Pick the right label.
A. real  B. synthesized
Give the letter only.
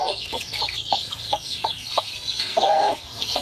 B